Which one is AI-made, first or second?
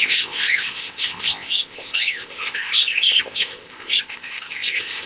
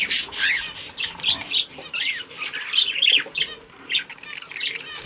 first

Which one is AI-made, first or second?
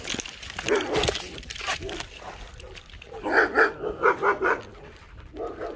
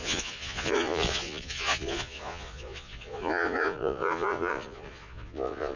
second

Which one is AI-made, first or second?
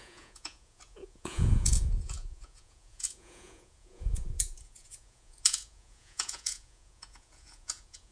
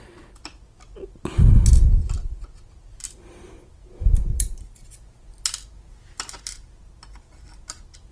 first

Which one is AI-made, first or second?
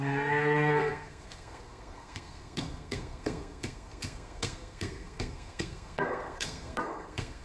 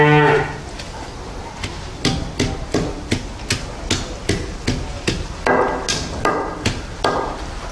first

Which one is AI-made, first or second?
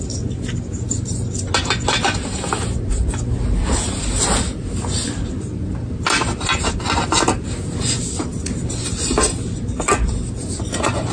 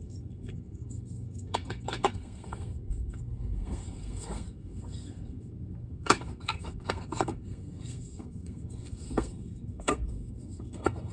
second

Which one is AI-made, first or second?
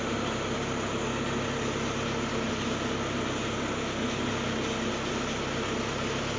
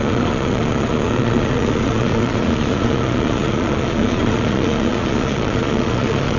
second